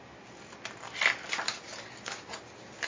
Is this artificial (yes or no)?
no